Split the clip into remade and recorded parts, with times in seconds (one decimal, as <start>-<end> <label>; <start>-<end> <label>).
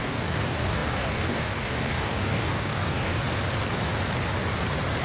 0.0-3.2 remade; 3.2-5.0 recorded